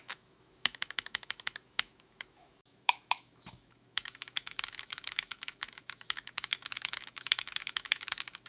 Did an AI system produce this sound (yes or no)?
yes